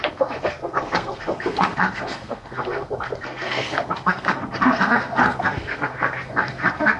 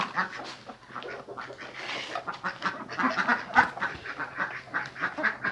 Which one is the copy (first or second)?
first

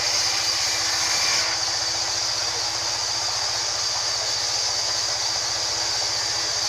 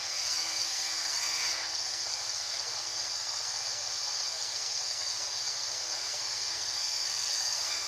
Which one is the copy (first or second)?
second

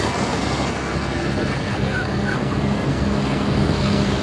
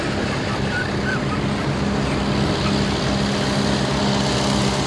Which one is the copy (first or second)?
first